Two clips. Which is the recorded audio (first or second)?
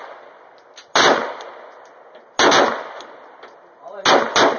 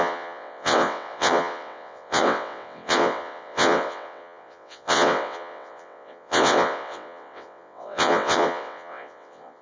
first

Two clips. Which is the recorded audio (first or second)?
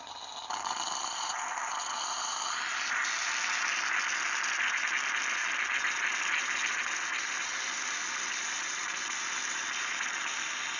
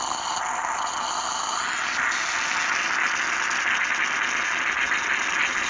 second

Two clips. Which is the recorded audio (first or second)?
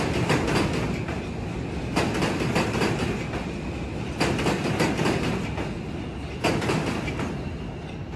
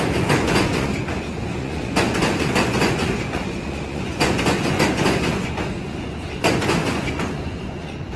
first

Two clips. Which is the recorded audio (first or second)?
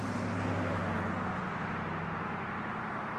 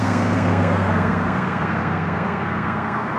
first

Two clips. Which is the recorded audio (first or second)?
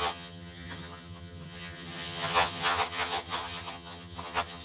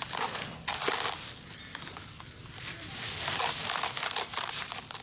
second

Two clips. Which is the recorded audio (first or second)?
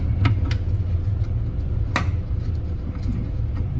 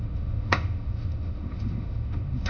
first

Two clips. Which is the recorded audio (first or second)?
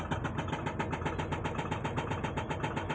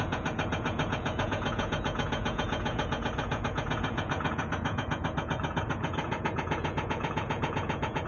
first